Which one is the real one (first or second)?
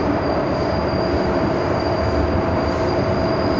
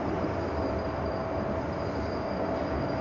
second